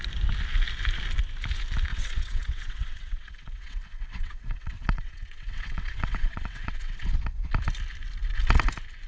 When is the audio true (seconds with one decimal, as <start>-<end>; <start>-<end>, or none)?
0.0-1.9; 7.1-9.1